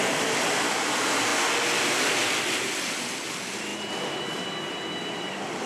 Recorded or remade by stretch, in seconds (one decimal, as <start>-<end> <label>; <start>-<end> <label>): 0.0-1.3 remade; 1.3-2.6 recorded; 2.6-5.7 remade